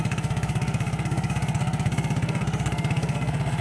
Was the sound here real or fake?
fake